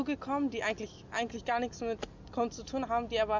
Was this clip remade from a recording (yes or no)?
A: no